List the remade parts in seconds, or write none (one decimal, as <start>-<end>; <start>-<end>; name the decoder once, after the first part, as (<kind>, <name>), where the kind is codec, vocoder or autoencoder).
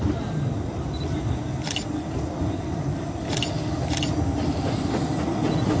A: none